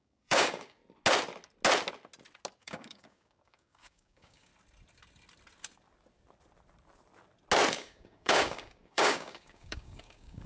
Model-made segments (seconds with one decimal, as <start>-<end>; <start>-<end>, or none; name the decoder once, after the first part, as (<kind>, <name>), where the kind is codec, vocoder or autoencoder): 0.0-0.8 (codec, DAC); 2.6-4.5; 7.7-10.5